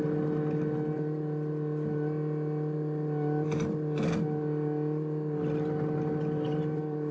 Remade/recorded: recorded